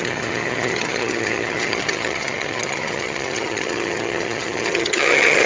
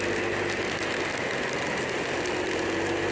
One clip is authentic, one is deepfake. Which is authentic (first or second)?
second